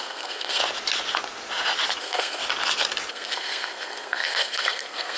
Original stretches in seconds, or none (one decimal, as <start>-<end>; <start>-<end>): 0.6-2.0; 2.4-3.1